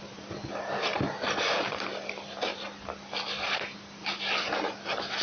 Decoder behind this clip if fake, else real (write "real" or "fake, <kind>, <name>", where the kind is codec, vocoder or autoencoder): real